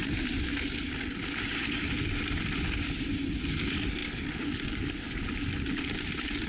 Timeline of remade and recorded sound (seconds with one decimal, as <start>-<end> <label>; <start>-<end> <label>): 0.0-6.5 recorded